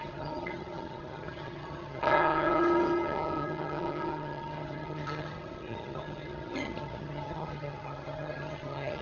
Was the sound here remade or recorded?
remade